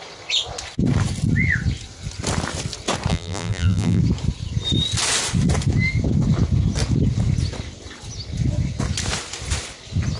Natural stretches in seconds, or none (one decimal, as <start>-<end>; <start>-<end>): 0.0-3.1; 4.0-10.2